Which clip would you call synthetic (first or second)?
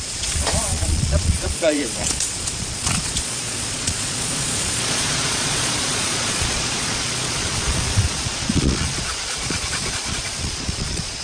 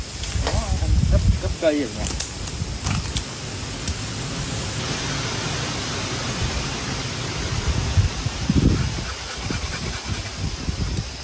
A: first